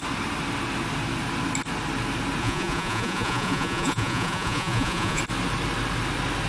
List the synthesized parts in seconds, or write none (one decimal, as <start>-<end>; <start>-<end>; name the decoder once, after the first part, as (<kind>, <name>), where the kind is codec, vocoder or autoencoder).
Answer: 2.4-5.2 (vocoder, Vocos)

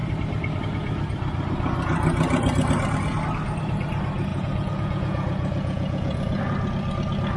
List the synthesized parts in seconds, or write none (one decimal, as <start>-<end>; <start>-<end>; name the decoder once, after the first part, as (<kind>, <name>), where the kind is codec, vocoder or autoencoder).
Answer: 4.3-6.4 (vocoder, Vocos)